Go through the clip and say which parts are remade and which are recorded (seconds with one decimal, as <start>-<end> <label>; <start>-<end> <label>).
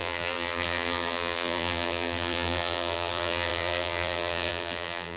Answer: 0.0-5.2 remade